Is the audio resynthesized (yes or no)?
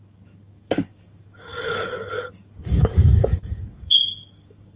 yes